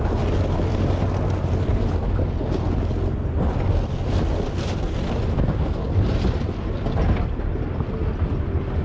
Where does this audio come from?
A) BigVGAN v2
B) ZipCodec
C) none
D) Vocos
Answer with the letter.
C